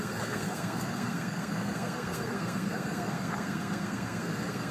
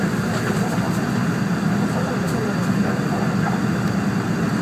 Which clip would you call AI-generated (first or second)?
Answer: first